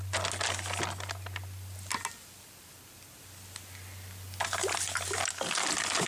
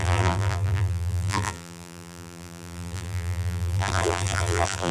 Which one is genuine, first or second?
first